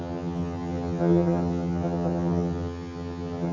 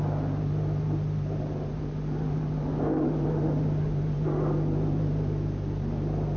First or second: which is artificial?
first